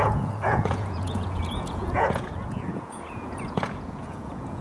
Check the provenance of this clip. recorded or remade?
remade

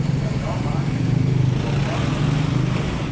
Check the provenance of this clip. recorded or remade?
recorded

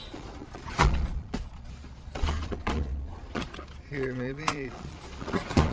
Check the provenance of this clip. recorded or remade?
remade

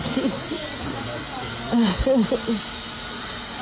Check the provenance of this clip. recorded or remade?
recorded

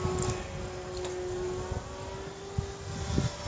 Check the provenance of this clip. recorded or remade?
remade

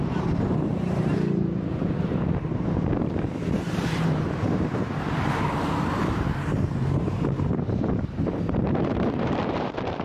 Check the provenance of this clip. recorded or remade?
remade